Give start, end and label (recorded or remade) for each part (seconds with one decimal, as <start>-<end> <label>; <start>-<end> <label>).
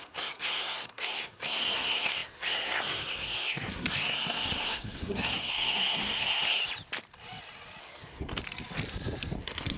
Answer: 0.0-6.6 remade; 6.6-7.8 recorded; 7.8-8.3 remade; 8.3-9.4 recorded; 9.4-9.8 remade